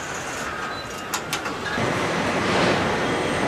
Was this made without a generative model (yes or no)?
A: yes